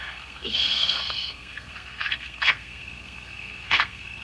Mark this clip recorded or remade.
remade